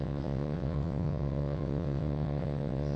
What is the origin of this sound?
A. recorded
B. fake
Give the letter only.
B